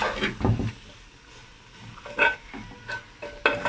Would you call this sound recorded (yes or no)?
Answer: yes